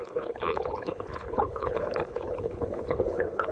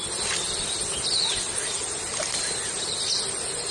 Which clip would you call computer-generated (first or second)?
first